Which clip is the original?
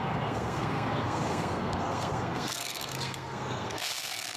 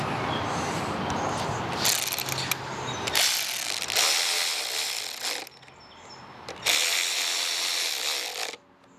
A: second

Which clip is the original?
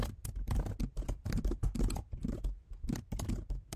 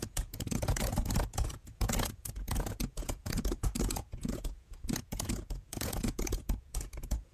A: first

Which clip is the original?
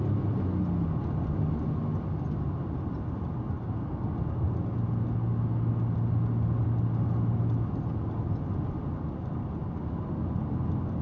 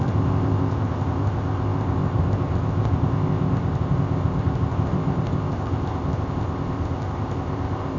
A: first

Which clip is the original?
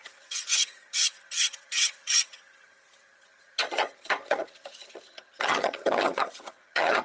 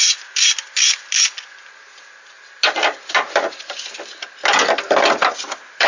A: second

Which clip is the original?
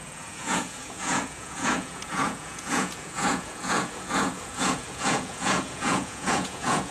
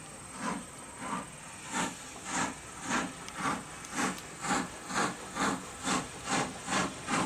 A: second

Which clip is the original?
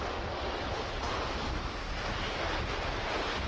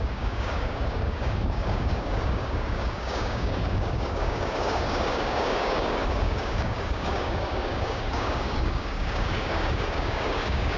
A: first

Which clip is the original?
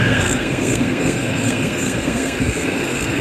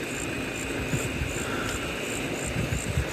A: second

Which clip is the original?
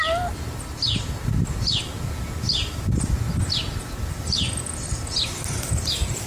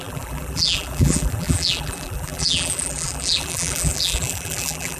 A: first